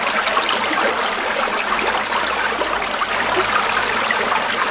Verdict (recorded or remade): recorded